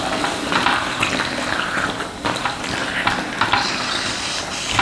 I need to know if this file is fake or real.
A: real